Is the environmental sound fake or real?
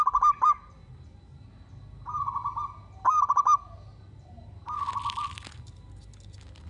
real